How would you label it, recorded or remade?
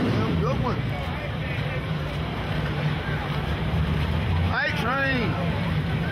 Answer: remade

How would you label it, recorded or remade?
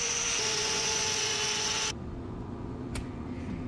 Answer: remade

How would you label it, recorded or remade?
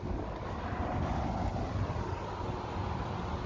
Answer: recorded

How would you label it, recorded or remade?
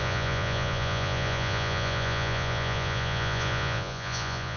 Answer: remade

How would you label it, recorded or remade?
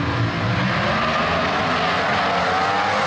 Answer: recorded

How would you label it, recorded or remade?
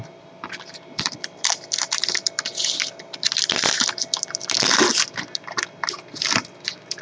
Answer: recorded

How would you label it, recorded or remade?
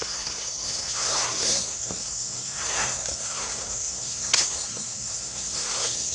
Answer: remade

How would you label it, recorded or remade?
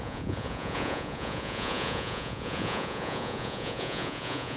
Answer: remade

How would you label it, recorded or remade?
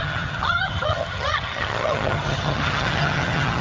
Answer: remade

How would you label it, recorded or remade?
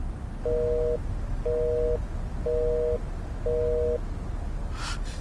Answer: recorded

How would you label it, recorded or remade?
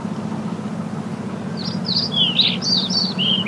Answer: recorded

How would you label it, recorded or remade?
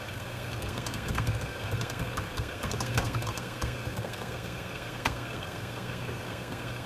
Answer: remade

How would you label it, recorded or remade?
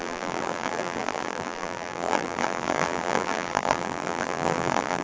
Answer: remade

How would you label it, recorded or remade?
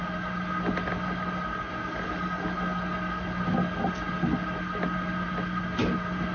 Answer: recorded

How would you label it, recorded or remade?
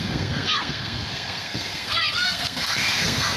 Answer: remade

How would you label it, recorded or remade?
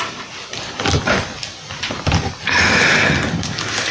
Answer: recorded